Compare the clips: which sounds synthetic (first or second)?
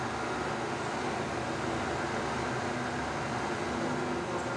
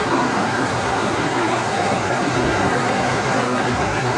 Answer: second